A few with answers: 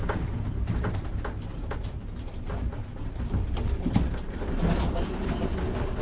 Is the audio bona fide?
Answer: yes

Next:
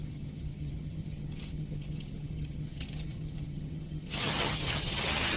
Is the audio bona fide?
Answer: no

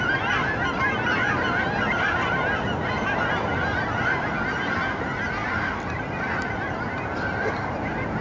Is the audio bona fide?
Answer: yes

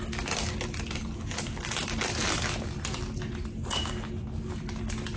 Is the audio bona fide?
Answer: yes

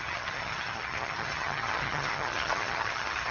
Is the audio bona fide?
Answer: no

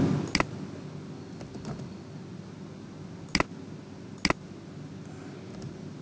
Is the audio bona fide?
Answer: yes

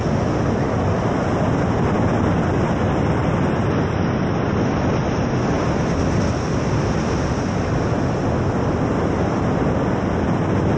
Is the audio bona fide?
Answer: yes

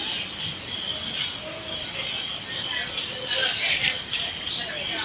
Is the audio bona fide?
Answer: yes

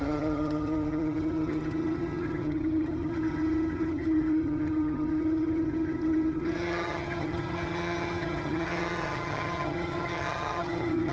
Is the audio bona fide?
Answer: no